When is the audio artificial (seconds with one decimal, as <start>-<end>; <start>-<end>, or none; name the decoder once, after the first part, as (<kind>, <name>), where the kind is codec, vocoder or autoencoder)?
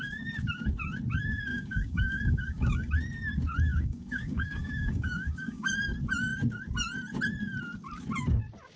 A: 1.5-2.9 (codec, DAC); 3.7-5.7